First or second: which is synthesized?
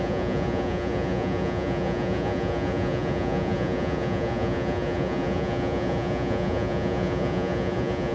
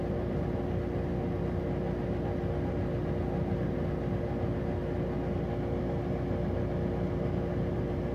first